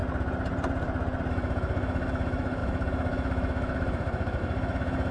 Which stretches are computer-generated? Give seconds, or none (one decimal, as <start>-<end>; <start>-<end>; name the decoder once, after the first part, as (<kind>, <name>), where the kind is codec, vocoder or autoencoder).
1.3-5.1 (autoencoder, DAC-VAE)